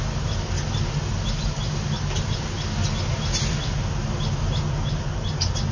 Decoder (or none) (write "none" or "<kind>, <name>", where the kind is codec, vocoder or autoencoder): none